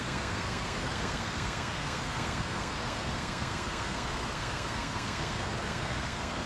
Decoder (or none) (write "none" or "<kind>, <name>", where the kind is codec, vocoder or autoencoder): codec, SNAC